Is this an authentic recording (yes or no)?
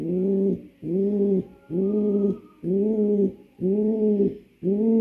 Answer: yes